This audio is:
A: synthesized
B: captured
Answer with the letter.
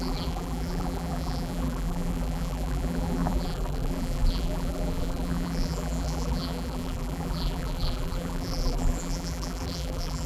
A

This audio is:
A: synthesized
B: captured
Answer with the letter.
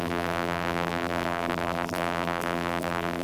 A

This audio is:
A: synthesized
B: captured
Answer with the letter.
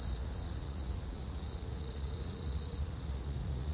A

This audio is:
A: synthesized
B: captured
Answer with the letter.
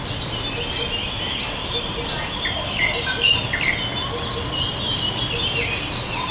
B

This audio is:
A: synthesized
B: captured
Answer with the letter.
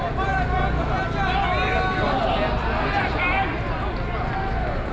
B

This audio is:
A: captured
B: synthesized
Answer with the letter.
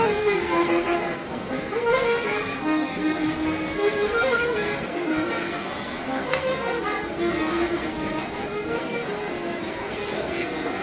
B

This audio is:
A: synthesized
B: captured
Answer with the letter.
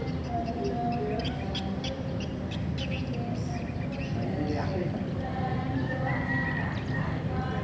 B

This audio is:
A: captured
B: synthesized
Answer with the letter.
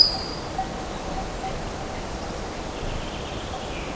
B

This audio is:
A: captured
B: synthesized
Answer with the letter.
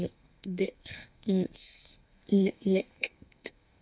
B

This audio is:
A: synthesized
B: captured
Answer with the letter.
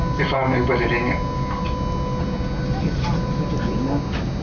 B